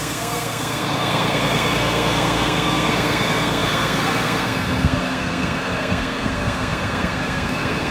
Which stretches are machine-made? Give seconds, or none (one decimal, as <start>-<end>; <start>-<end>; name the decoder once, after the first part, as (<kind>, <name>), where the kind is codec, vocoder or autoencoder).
0.0-7.9 (codec, SNAC)